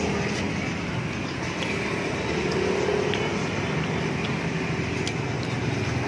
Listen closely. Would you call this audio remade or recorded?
recorded